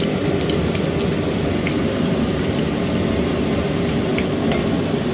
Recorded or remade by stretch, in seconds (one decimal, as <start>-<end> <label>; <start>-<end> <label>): 0.0-5.1 recorded